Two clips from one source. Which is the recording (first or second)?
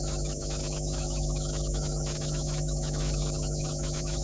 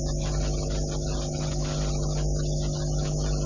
second